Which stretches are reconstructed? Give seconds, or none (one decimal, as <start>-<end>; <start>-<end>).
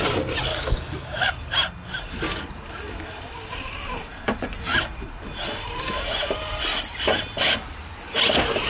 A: 0.5-1.3